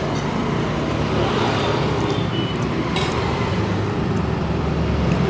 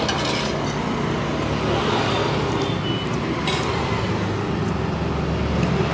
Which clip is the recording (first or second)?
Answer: second